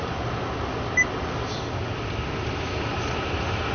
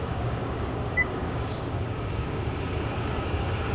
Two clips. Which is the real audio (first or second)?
first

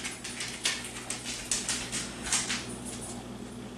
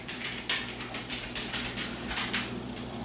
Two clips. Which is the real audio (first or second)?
first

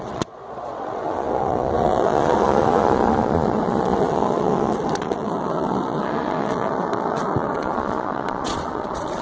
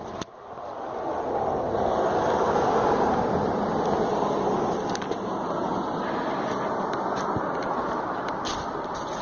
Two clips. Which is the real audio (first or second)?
second